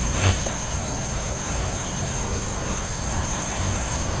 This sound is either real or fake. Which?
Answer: fake